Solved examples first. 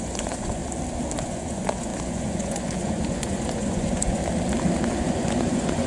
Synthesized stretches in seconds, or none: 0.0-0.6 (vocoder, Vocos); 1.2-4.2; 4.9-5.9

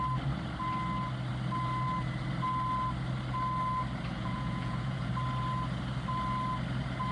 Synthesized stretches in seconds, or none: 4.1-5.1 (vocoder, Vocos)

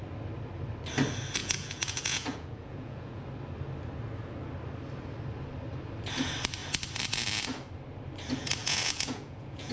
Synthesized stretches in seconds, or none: 1.4-3.2 (vocoder, Vocos); 8.6-9.7

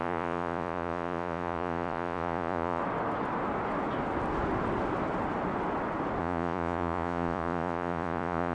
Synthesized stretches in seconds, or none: 0.0-2.8 (vocoder, Vocos); 6.2-8.5

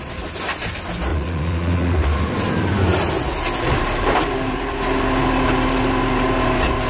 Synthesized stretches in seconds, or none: 1.1-2.1 (vocoder, Vocos)

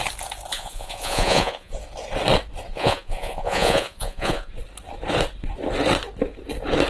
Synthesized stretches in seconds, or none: 0.5-1.7 (vocoder, Vocos); 2.7-4.5

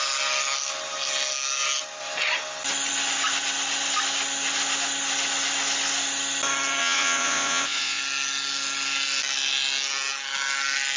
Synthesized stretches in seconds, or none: 6.8-8.0 (vocoder, Vocos)

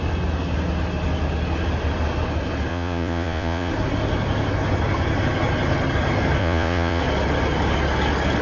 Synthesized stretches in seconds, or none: 2.7-3.7 (vocoder, Vocos); 6.4-7.0